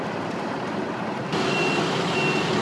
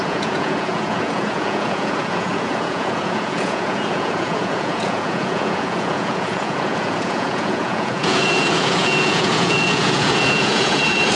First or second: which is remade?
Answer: second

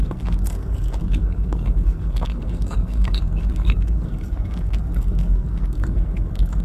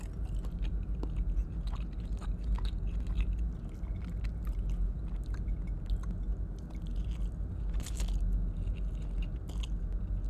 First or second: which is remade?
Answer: first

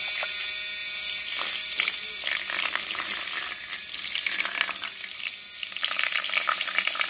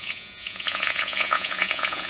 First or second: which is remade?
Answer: second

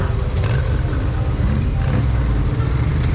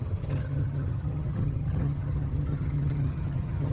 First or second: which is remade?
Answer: second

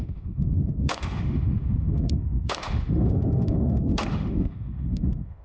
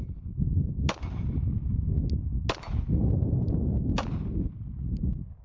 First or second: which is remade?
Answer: first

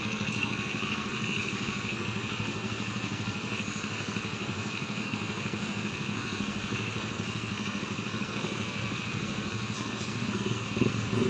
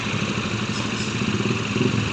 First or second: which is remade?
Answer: first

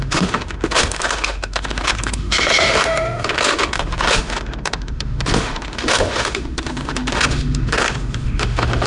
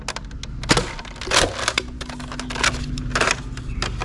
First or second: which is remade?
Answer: first